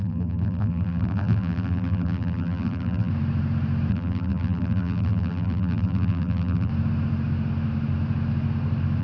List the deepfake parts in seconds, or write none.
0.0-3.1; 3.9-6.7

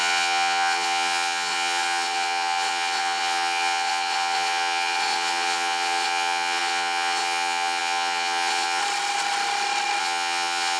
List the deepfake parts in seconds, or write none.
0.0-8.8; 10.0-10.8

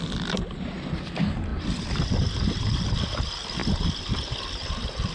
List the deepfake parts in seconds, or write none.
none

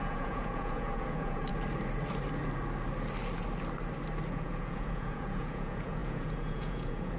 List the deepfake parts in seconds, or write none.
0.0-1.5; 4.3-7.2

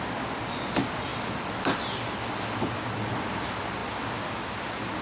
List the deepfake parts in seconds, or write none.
none

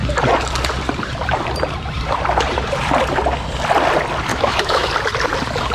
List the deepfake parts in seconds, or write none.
4.3-4.9

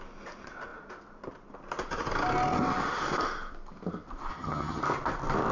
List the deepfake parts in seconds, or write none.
4.3-4.8

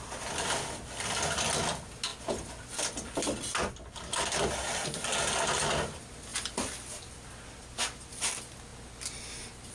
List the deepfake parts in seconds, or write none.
none